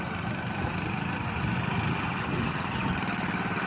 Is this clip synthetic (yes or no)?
no